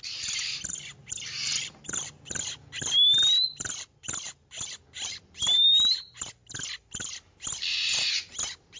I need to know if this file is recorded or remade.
recorded